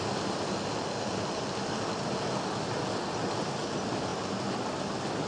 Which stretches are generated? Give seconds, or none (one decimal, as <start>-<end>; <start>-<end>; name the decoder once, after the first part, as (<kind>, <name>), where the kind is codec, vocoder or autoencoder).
none